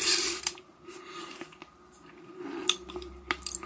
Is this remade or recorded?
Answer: recorded